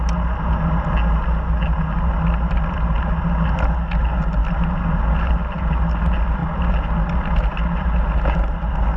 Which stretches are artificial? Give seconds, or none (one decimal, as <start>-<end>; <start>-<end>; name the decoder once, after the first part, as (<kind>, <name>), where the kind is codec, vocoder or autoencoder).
none